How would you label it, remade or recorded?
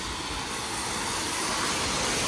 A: recorded